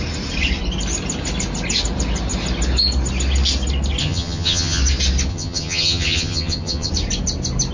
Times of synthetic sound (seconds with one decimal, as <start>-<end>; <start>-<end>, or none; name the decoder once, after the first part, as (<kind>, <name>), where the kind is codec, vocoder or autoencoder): 4.0-4.8 (vocoder, HiFi-GAN); 5.3-6.9